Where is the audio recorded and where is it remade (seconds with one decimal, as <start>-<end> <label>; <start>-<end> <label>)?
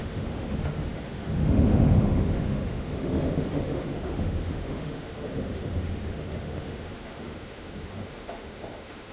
0.0-9.1 remade